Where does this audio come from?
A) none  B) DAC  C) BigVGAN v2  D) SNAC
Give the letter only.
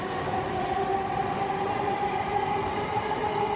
A